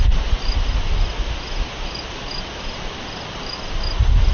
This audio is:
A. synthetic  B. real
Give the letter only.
B